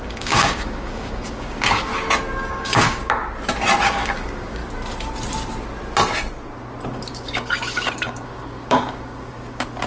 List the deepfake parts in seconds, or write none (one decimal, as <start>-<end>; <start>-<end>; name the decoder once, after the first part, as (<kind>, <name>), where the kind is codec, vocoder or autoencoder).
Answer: 0.0-1.9 (codec, DAC); 2.5-3.0; 3.8-4.6; 6.9-9.9